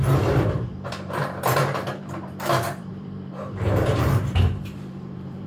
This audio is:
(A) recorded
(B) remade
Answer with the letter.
B